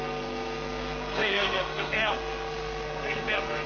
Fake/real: fake